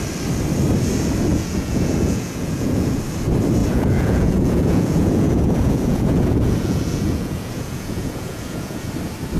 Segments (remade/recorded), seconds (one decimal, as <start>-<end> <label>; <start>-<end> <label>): 0.0-1.3 recorded; 1.3-3.0 remade; 3.0-3.6 recorded; 3.6-8.9 remade; 8.9-9.4 recorded